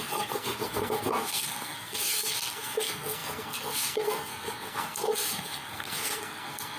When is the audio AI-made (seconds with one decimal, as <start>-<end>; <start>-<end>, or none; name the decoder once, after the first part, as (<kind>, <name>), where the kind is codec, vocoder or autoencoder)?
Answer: 0.0-6.8 (codec, SNAC)